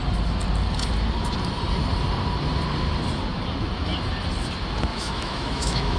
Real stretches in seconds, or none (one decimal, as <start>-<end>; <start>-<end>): 0.0-4.9